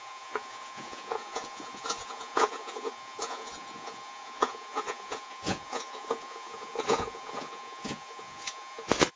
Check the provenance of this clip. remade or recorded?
remade